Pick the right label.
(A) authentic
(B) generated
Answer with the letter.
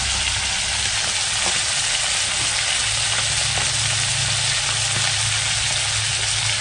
A